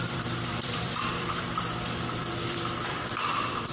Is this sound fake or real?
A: fake